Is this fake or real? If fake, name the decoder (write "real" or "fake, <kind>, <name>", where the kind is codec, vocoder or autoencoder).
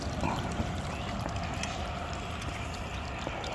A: real